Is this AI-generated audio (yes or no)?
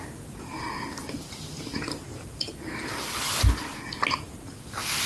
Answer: no